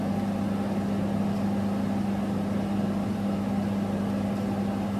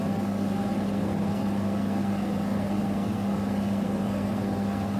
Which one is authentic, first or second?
first